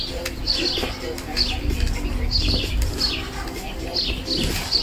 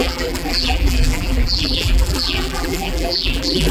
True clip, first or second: first